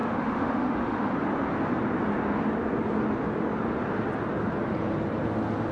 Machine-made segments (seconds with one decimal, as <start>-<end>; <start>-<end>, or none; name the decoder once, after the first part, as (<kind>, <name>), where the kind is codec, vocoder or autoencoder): 0.0-1.1 (autoencoder, DAC-VAE)